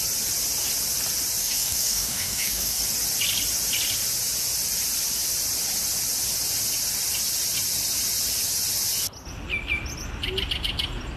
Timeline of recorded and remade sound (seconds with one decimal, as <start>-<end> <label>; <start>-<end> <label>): 0.0-1.4 recorded; 1.4-2.8 remade; 2.8-11.2 recorded